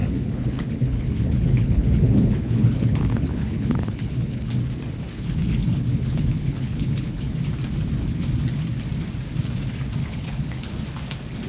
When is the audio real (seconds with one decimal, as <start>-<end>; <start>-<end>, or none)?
4.5-5.1; 7.3-10.0; 10.8-11.5